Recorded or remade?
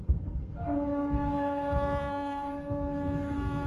remade